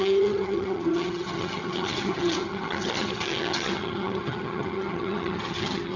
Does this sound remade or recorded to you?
remade